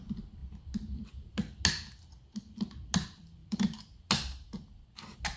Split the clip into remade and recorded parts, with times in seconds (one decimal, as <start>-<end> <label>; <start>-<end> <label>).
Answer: 0.0-3.4 recorded; 3.4-4.0 remade; 4.0-5.4 recorded